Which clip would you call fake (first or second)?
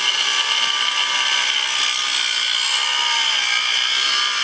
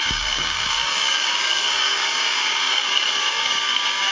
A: second